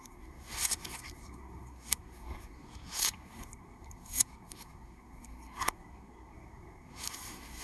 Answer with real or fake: fake